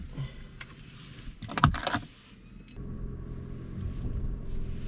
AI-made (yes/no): no